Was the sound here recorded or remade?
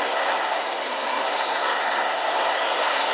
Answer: remade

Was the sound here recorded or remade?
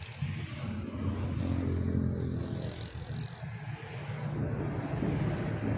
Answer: recorded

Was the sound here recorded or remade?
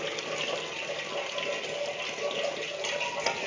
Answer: recorded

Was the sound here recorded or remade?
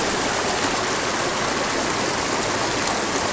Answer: recorded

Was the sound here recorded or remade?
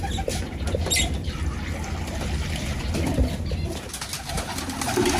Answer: recorded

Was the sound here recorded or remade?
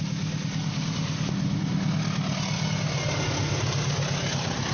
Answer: recorded